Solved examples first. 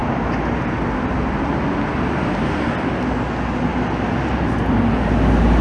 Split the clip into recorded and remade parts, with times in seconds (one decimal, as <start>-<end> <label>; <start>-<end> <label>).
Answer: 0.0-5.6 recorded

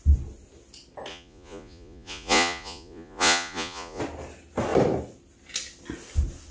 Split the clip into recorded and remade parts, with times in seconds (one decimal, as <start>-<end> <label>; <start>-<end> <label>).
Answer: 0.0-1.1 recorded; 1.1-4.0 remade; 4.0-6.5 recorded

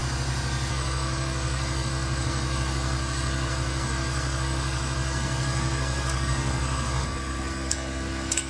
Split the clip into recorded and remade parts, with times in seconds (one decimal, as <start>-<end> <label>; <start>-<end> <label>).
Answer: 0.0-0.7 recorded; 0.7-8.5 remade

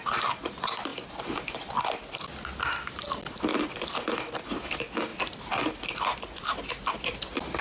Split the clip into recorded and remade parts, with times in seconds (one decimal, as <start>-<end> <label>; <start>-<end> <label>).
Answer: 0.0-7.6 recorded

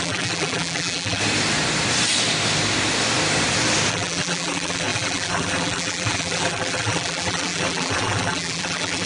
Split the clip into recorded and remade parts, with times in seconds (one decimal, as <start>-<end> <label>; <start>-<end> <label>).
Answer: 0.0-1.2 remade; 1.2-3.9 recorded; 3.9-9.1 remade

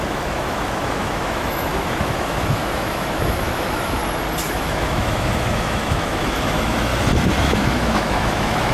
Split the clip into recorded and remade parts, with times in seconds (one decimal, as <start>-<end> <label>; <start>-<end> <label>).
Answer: 0.0-4.0 remade; 4.0-4.5 recorded; 4.5-6.9 remade; 6.9-7.4 recorded; 7.4-8.7 remade